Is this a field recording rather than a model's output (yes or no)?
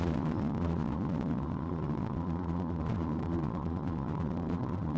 no